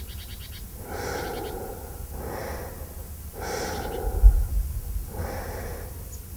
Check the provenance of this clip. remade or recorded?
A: recorded